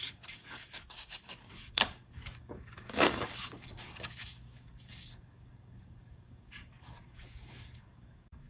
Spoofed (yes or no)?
yes